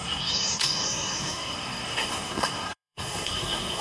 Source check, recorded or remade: remade